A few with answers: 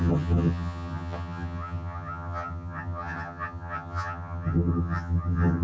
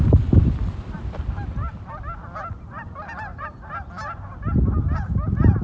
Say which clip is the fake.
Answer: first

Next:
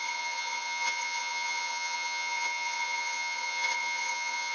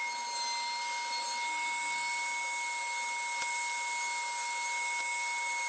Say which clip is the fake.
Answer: first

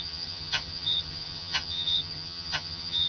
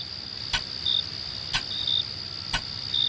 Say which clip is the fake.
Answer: first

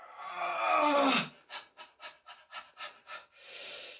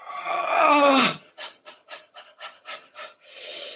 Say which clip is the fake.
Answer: second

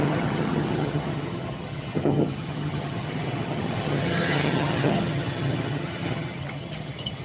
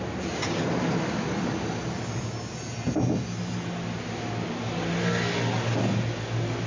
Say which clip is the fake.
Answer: first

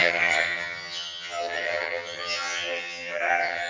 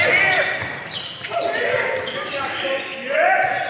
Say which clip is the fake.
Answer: first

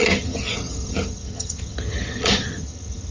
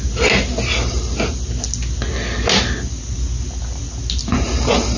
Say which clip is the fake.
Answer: first